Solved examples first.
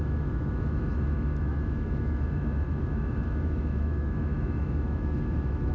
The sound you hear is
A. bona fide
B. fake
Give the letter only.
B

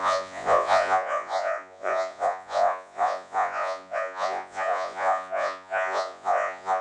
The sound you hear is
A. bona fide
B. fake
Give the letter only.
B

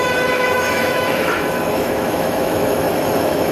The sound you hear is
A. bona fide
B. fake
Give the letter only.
B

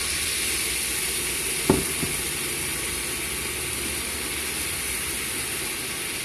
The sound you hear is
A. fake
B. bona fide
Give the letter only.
B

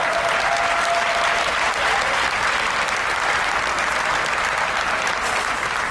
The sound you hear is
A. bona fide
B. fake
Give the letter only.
A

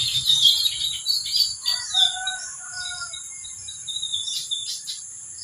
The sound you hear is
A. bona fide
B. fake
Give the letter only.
B